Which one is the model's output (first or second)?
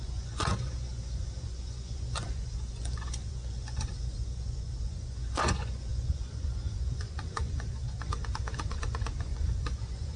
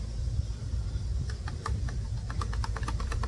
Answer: first